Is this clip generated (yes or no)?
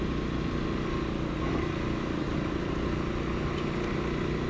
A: no